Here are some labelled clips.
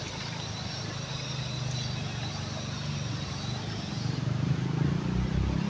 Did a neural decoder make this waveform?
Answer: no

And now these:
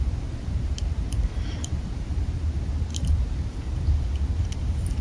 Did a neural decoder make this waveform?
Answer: yes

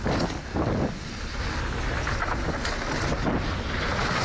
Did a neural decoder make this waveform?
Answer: no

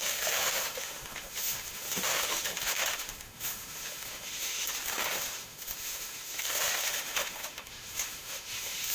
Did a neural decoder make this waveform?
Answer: yes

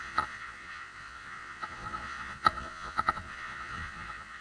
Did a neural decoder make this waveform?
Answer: yes